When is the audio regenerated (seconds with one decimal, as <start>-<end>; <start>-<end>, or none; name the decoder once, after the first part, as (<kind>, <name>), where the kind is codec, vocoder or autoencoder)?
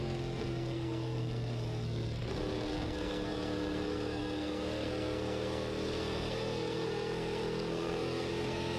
0.0-8.8 (codec, SNAC)